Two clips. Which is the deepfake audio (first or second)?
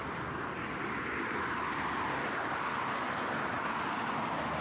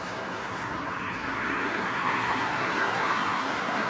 second